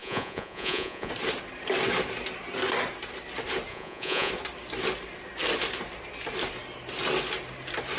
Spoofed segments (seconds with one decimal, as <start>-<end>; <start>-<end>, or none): 0.0-1.1; 3.7-4.3